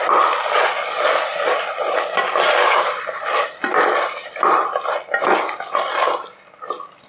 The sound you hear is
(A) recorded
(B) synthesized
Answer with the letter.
A